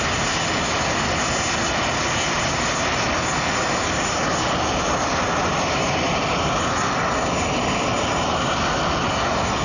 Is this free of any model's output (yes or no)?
yes